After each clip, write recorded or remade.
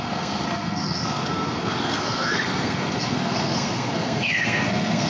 remade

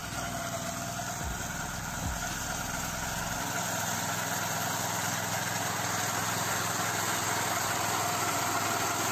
recorded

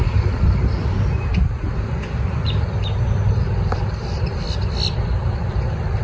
recorded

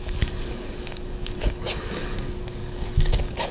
remade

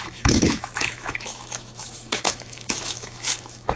remade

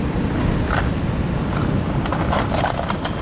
recorded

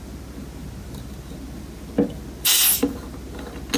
recorded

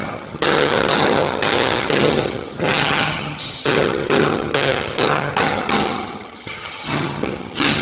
remade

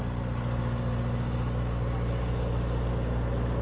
recorded